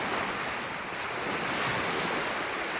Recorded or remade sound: recorded